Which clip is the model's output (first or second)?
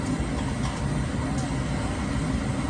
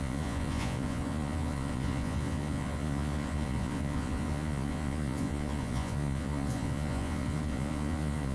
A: second